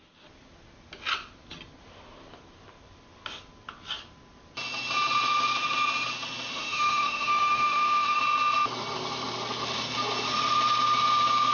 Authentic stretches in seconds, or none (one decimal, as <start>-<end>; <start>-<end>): 0.0-6.5; 8.2-11.5